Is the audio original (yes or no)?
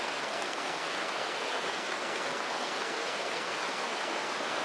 no